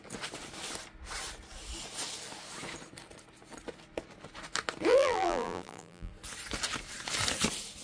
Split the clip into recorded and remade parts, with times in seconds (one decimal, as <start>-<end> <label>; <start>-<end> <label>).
0.0-4.9 recorded; 4.9-6.1 remade; 6.1-7.8 recorded